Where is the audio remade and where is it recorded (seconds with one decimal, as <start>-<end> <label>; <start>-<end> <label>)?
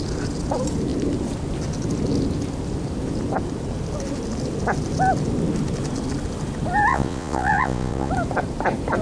0.0-6.9 recorded; 6.9-8.1 remade; 8.1-9.0 recorded